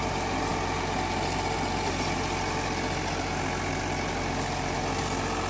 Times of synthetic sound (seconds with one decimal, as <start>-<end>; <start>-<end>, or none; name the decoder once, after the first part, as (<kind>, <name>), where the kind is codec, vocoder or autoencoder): none